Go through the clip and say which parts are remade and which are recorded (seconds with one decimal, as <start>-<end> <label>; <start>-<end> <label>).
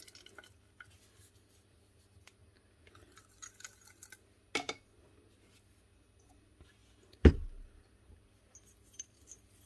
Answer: 0.0-9.7 recorded